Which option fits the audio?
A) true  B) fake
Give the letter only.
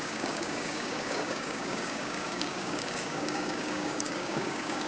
B